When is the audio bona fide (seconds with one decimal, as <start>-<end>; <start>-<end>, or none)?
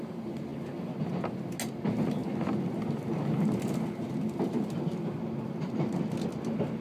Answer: 0.0-6.8